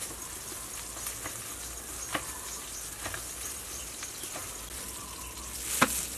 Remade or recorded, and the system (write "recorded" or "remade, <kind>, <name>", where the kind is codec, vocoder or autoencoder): recorded